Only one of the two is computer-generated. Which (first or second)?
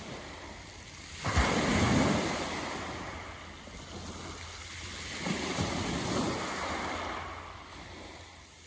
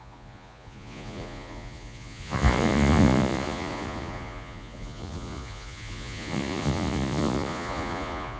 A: second